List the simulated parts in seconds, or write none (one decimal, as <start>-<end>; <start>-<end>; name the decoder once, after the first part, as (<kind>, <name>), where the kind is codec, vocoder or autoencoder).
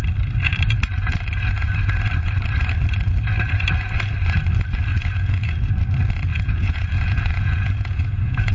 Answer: 4.9-5.7 (vocoder, Vocos); 6.3-8.5